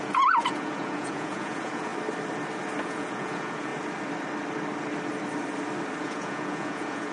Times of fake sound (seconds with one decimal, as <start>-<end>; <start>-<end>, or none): 0.0-1.9; 2.8-3.7; 6.0-7.1